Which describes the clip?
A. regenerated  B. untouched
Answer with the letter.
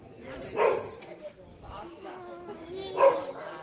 B